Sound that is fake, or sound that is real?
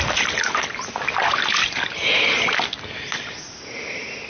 real